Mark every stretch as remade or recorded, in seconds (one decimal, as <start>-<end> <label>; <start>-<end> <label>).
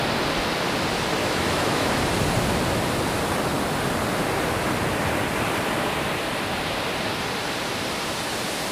0.0-1.2 recorded; 1.2-1.9 remade; 1.9-8.7 recorded